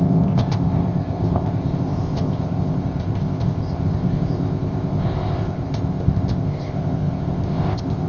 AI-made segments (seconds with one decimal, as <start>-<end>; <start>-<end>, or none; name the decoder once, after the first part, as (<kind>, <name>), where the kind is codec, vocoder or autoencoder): 0.0-8.1 (codec, ZipCodec)